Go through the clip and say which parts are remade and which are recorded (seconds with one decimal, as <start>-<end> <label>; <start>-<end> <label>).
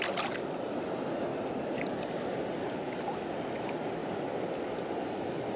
0.0-5.6 recorded